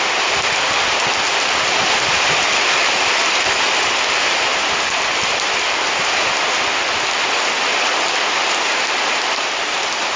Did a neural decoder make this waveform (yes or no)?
no